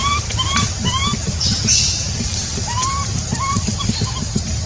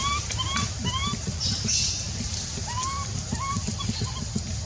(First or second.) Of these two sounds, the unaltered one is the second